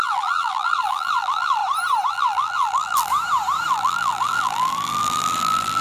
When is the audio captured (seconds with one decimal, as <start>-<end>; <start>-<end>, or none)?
1.6-2.1; 3.1-3.7